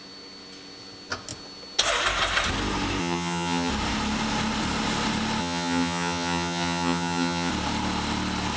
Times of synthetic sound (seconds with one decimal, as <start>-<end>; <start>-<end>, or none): 3.0-3.7; 5.4-7.5